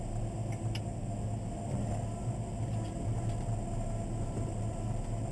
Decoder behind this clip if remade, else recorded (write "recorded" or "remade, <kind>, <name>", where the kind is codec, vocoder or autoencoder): recorded